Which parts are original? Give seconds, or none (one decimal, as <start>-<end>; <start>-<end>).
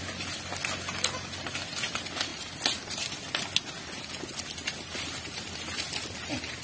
0.0-6.6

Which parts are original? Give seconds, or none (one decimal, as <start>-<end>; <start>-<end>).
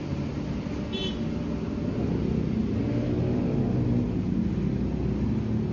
0.0-5.7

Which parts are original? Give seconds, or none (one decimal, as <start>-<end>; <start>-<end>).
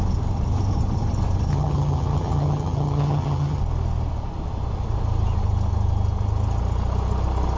0.0-1.5; 3.6-7.6